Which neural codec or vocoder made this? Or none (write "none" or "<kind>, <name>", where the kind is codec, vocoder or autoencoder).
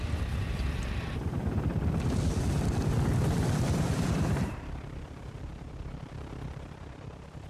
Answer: none